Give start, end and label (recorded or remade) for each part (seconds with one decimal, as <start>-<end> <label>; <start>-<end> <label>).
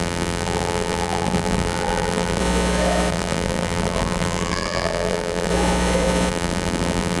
0.0-2.4 remade; 2.4-3.1 recorded; 3.1-5.5 remade; 5.5-6.3 recorded; 6.3-7.2 remade